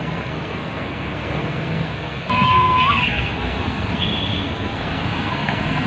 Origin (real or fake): fake